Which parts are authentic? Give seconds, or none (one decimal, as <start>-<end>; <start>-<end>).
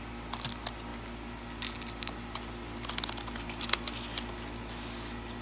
0.0-5.4